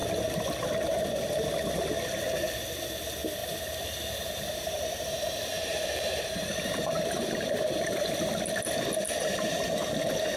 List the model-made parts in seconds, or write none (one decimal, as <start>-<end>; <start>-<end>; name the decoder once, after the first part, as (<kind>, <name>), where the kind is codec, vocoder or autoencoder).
3.4-7.9 (vocoder, BigVGAN v2)